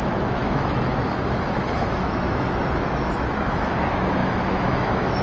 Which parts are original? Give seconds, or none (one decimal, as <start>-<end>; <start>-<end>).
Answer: none